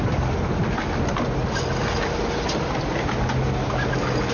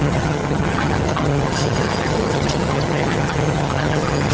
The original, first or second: first